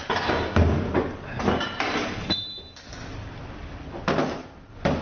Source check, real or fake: real